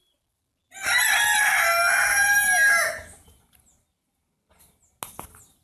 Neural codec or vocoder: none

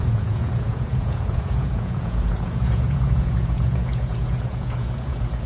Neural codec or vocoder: vocoder, Vocos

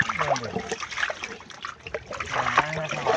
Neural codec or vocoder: none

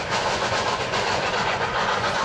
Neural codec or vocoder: vocoder, Vocos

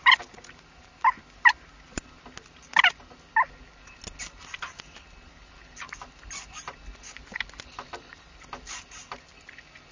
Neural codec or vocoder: none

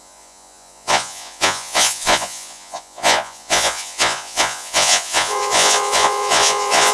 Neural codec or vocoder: vocoder, Vocos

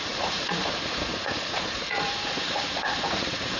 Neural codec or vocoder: vocoder, Vocos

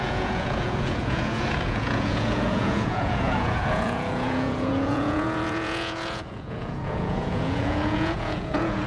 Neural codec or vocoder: vocoder, Vocos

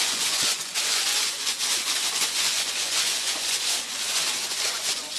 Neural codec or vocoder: vocoder, Vocos